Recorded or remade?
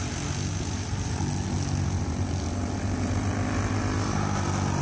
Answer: recorded